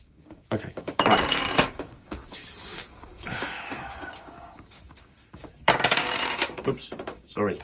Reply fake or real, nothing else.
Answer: fake